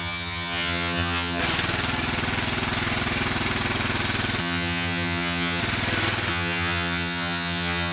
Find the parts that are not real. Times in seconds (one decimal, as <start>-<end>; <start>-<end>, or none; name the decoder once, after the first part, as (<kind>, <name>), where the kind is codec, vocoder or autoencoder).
0.0-1.4 (vocoder, HiFi-GAN); 4.4-5.6; 6.3-7.9